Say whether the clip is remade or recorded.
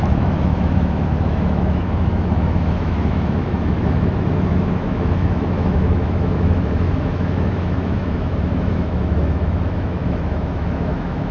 remade